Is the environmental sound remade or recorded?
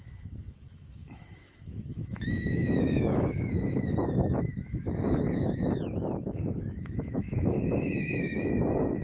remade